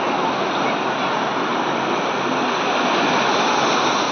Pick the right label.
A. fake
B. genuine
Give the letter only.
B